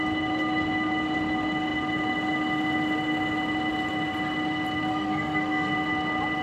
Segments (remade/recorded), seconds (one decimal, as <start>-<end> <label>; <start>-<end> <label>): 0.0-4.9 recorded; 4.9-5.7 remade; 5.7-6.4 recorded